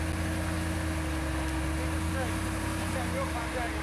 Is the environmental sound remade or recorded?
recorded